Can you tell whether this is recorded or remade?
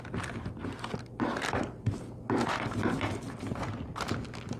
recorded